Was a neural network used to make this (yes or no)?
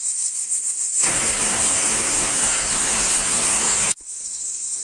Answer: yes